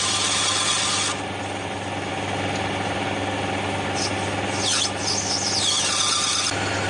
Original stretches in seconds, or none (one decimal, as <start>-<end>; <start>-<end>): 0.0-6.9